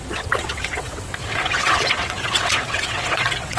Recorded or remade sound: remade